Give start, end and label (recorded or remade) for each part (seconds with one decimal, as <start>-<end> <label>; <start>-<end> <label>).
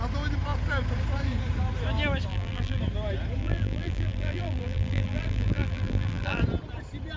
0.0-2.3 recorded; 2.3-2.8 remade; 2.8-3.4 recorded; 3.4-6.4 remade; 6.4-7.2 recorded